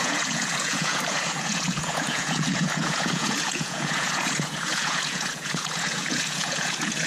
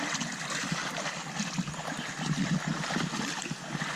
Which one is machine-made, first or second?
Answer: first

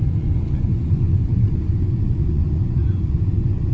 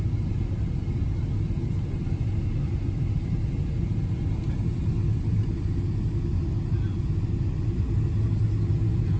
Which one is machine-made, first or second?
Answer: first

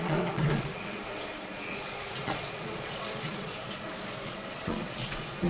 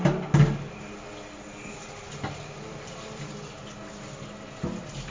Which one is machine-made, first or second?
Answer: first